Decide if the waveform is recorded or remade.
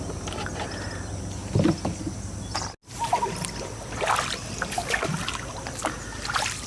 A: recorded